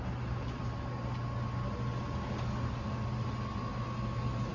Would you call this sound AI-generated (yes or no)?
no